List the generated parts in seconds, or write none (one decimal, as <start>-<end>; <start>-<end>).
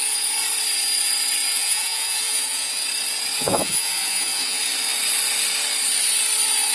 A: 1.5-2.8; 3.4-4.6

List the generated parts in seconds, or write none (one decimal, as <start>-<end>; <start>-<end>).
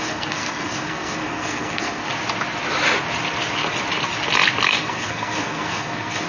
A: 0.0-2.1; 4.7-6.3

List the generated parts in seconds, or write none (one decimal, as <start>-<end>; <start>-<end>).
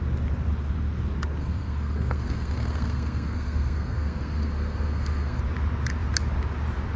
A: 1.4-5.4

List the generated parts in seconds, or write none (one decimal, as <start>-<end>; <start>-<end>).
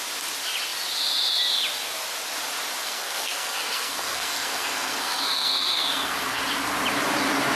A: 2.8-6.4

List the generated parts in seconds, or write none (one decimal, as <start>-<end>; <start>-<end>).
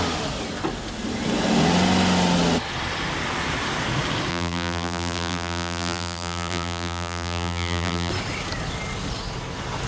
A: 4.3-8.1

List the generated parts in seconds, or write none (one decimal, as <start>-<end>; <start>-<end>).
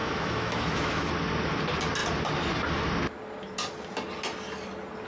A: 0.0-1.1